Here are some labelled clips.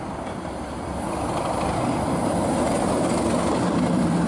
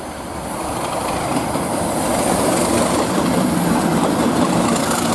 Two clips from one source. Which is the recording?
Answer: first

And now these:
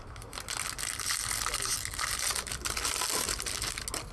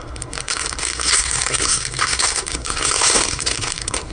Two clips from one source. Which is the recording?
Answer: first